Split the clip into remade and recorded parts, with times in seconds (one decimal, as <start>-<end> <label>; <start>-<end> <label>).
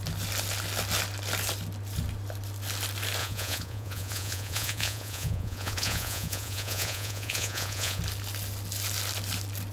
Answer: 0.0-3.2 recorded; 3.2-8.0 remade; 8.0-9.7 recorded